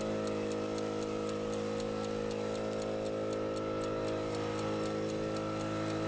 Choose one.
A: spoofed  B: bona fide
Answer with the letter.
B